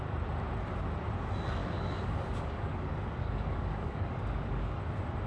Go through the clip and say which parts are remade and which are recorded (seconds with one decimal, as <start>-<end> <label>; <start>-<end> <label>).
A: 0.0-1.6 recorded; 1.6-4.8 remade; 4.8-5.3 recorded